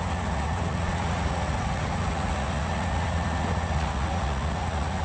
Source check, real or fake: fake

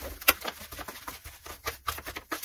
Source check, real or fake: real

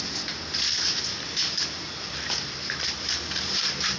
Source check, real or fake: real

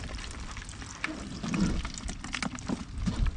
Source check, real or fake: real